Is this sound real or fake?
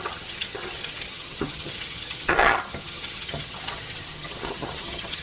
fake